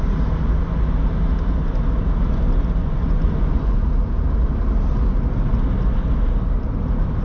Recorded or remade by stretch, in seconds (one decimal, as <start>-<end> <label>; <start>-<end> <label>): 0.0-2.8 recorded; 2.8-3.9 remade; 3.9-7.2 recorded